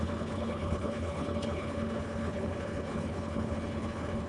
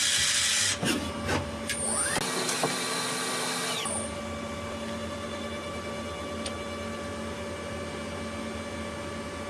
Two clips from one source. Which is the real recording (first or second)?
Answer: second